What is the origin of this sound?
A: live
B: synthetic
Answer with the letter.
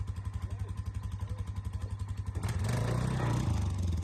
A